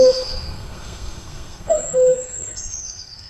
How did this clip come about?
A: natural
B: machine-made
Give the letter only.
B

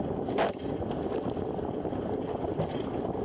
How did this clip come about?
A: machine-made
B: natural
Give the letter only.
B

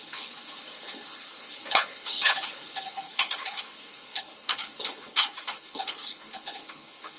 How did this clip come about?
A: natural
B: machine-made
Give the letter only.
B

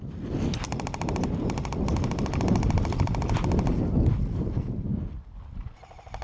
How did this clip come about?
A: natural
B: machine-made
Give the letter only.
A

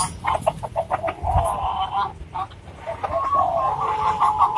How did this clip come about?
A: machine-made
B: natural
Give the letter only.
B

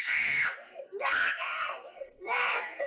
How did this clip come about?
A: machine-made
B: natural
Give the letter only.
A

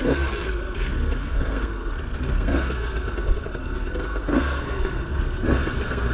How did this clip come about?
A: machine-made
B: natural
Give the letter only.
A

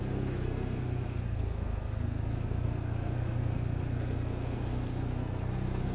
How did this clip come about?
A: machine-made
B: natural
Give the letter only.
A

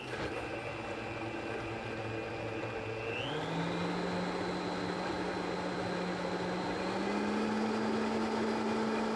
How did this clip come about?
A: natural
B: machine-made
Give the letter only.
A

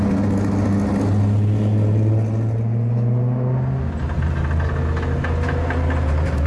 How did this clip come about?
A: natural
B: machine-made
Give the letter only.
A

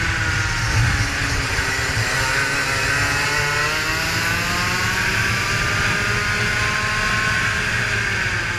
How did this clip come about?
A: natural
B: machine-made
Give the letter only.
A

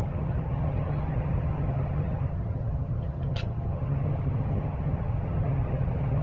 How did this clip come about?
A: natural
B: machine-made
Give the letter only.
B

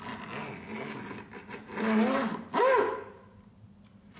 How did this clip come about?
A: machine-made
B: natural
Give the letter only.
B